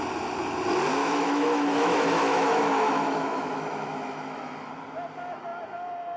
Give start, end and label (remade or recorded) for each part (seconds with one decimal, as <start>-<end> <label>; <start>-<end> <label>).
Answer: 0.0-1.0 recorded; 1.0-4.7 remade; 4.7-6.2 recorded